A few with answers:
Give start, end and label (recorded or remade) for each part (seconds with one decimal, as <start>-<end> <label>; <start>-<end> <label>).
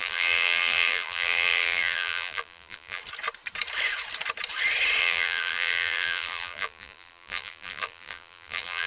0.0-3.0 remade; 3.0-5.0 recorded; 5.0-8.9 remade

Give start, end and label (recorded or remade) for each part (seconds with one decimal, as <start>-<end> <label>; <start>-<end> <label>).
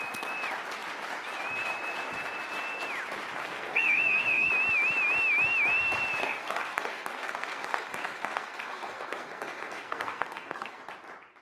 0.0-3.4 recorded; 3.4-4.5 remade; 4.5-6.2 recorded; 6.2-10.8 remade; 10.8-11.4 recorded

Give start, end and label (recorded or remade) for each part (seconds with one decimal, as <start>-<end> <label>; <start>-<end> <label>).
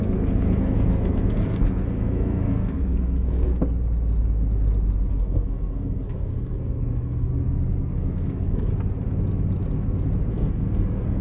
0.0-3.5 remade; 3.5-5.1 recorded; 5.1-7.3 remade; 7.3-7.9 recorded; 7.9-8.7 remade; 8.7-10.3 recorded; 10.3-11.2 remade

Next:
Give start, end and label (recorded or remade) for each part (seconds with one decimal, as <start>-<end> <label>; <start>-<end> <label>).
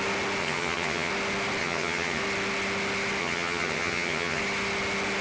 0.0-0.4 recorded; 0.4-1.1 remade; 1.1-1.6 recorded; 1.6-2.2 remade; 2.2-3.2 recorded; 3.2-4.4 remade; 4.4-5.2 recorded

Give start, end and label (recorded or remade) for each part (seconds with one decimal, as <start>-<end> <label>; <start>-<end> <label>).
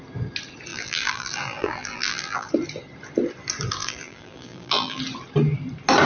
0.0-0.7 recorded; 0.7-2.5 remade; 2.5-3.8 recorded; 3.8-5.0 remade; 5.0-6.1 recorded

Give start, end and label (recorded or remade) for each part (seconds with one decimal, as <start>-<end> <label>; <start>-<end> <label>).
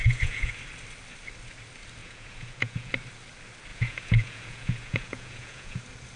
0.0-0.5 remade; 0.5-2.0 recorded; 2.0-2.9 remade; 2.9-3.7 recorded; 3.7-5.8 remade; 5.8-6.2 recorded